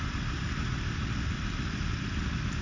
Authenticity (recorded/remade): recorded